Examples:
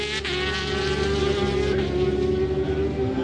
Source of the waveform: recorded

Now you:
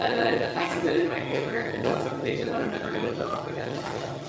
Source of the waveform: remade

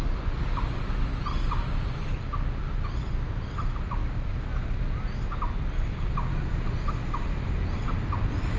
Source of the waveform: recorded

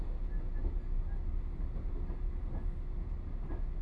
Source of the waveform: recorded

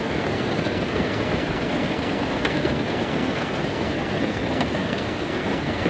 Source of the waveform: remade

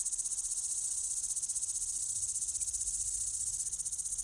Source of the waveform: recorded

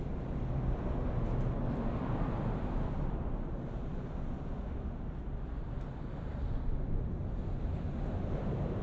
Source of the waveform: recorded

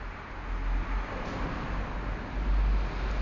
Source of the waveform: recorded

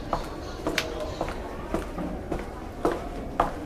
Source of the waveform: recorded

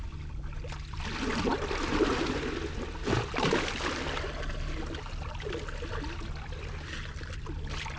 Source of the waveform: recorded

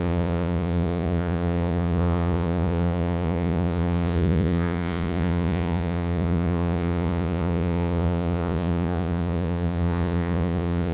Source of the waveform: remade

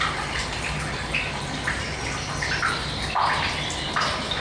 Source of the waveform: recorded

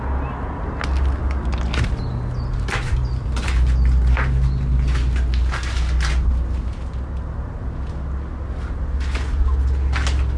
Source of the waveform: recorded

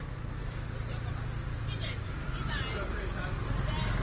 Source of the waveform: recorded